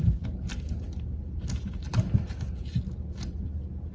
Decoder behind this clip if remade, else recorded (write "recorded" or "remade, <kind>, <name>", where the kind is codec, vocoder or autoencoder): recorded